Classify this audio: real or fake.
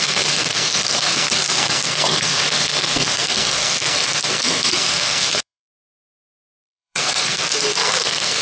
fake